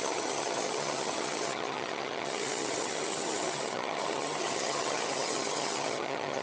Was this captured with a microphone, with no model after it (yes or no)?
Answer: no